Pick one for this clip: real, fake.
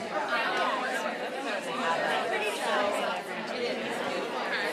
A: real